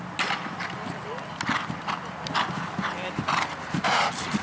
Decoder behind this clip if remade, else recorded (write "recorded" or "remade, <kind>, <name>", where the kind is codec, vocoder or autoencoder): recorded